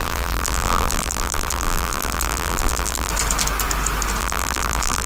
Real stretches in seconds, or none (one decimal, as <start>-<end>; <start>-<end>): 3.1-4.2